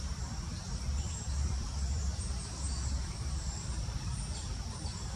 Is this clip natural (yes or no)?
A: no